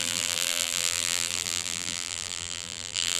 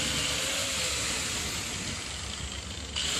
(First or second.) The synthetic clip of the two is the first